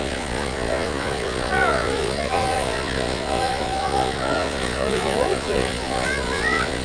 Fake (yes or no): yes